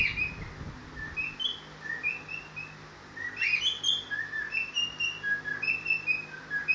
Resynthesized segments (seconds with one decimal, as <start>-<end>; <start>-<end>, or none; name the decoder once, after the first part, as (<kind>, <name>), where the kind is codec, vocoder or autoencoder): none